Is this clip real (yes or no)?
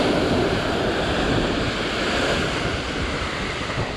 no